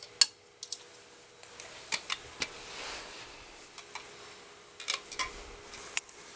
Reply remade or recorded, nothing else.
recorded